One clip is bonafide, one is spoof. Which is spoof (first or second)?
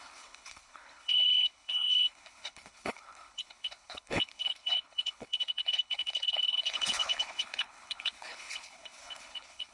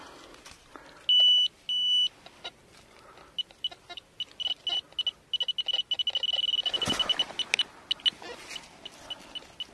first